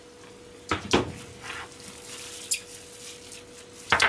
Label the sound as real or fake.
real